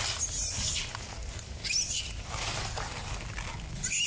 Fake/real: real